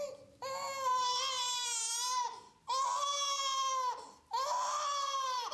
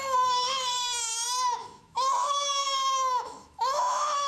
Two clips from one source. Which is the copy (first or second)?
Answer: second